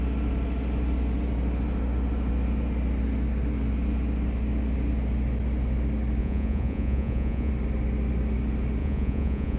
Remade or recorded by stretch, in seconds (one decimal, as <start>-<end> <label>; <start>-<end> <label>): 0.0-6.2 recorded; 6.2-7.5 remade; 7.5-8.8 recorded; 8.8-9.6 remade

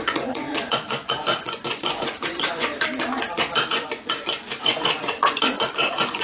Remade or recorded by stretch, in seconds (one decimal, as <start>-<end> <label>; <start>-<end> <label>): 0.0-2.7 remade; 2.7-3.7 recorded; 3.7-6.2 remade